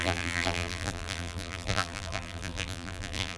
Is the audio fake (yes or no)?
yes